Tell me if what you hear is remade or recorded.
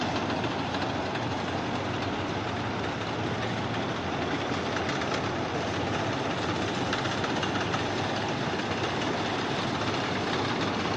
recorded